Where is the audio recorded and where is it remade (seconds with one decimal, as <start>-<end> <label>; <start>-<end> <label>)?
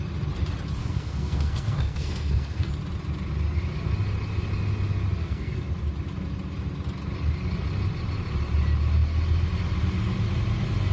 0.0-0.8 recorded; 0.8-2.7 remade; 2.7-5.2 recorded; 5.2-5.7 remade; 5.7-10.9 recorded